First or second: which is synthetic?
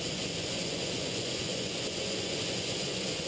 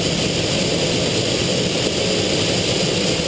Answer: first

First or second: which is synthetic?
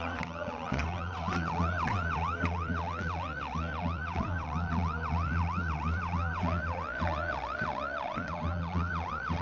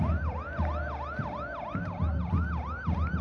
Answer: first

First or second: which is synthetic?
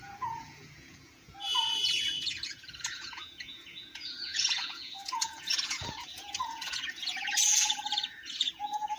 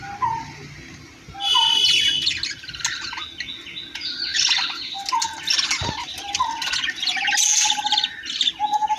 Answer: first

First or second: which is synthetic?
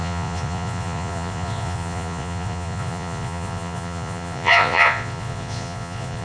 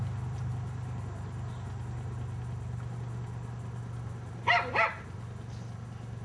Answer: first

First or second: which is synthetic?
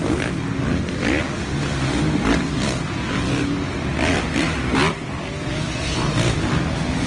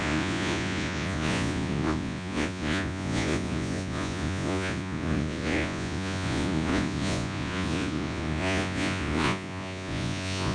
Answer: second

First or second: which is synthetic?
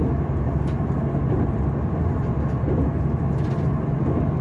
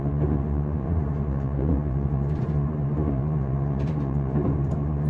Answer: second